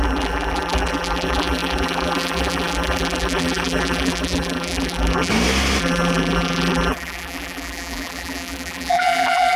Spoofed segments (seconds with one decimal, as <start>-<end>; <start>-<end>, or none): 0.0-5.3; 5.8-9.6